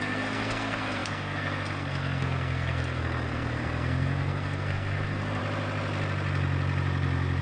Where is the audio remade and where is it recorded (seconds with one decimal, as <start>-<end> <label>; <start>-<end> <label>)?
0.0-5.4 remade; 5.4-7.4 recorded